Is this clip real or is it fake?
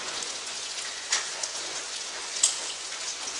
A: fake